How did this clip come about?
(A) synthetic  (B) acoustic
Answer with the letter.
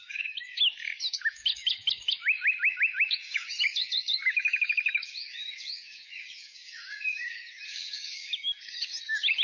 A